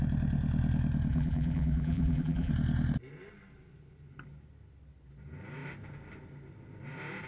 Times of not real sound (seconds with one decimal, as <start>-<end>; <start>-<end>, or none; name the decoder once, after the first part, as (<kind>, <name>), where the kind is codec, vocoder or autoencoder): 1.1-2.5 (vocoder, BigVGAN v2)